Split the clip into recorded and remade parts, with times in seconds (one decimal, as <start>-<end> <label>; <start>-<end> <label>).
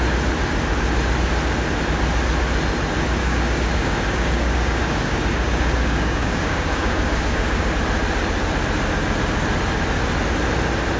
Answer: 0.0-3.2 recorded; 3.2-7.7 remade; 7.7-11.0 recorded